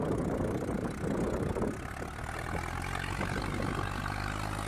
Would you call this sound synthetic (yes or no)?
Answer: no